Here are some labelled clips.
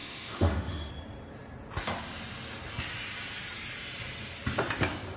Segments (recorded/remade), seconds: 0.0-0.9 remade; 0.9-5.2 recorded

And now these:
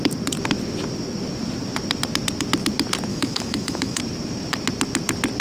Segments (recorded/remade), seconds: 0.0-3.1 recorded; 3.1-4.0 remade; 4.0-5.4 recorded